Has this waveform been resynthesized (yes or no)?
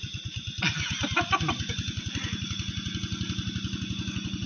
no